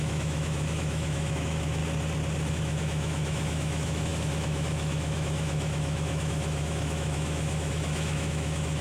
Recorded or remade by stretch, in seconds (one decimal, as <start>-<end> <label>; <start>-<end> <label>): 0.0-1.8 remade; 1.8-2.5 recorded; 2.5-8.8 remade